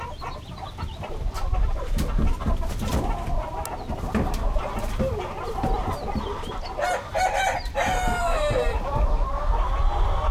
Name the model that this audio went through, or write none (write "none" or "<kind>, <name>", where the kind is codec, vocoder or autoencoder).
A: none